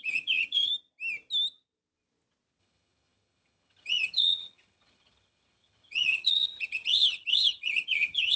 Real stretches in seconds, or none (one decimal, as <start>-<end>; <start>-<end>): 0.7-2.6